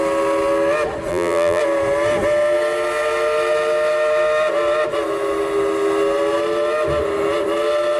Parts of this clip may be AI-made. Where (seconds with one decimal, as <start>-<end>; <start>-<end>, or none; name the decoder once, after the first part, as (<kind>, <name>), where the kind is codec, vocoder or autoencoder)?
1.1-1.6 (vocoder, BigVGAN v2)